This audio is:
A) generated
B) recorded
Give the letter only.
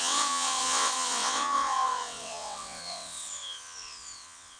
A